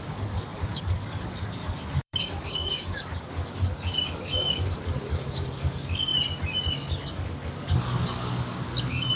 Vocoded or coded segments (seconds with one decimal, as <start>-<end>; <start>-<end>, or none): 0.0-6.1; 6.7-9.2